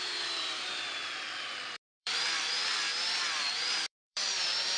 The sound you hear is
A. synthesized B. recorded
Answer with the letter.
A